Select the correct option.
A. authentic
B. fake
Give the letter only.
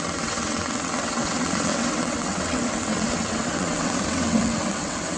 B